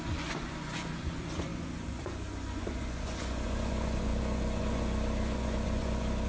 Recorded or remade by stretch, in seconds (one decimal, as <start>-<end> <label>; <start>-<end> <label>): 0.0-6.3 remade